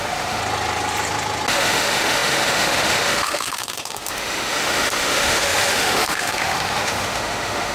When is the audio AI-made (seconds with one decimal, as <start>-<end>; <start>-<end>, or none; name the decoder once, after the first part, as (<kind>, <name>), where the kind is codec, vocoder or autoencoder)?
0.0-0.4 (autoencoder, DAC-VAE); 1.5-7.7